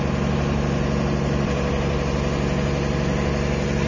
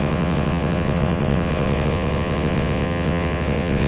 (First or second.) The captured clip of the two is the first